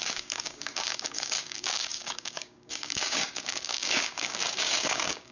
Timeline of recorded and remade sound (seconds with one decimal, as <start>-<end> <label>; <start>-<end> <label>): 0.0-5.3 remade